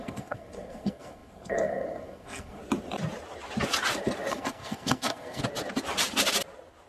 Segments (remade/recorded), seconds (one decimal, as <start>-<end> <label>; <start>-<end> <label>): 0.0-2.6 remade; 2.6-4.3 recorded; 4.3-5.4 remade; 5.4-6.9 recorded